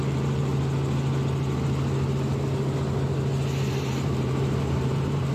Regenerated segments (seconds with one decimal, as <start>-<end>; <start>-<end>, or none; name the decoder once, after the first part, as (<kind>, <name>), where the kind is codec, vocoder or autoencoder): 0.0-0.5 (vocoder, BigVGAN v2); 3.7-5.3